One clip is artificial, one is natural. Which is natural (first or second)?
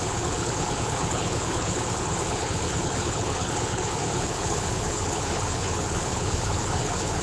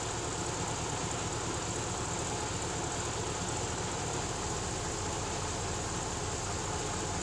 second